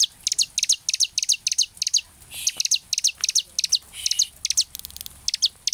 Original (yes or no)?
yes